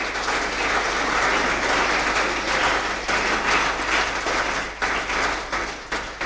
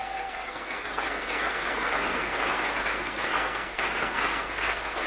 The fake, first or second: second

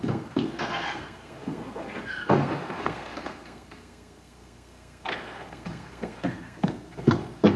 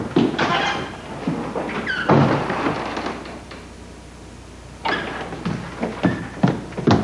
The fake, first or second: first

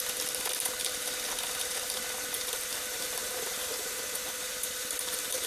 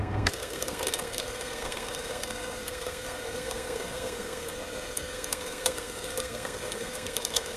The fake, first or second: second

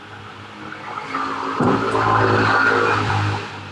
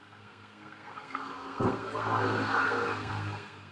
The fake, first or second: second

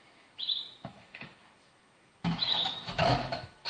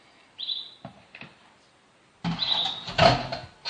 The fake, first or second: first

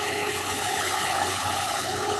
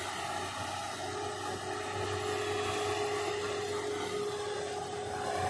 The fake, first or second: first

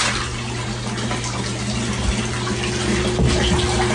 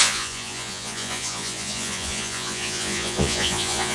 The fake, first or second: second